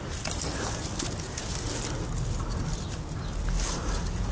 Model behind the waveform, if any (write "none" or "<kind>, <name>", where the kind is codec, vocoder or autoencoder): none